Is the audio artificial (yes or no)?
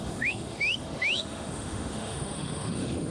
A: yes